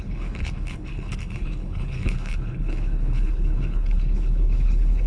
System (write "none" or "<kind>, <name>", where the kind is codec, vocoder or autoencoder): codec, HILCodec